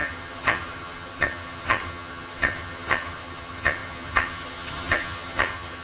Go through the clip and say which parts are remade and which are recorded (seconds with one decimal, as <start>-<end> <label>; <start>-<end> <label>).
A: 0.0-5.8 remade